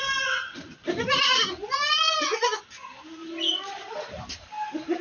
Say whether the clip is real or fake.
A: real